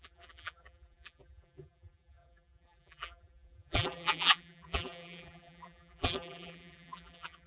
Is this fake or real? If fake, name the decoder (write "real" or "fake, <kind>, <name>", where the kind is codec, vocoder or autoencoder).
fake, vocoder, BigVGAN v2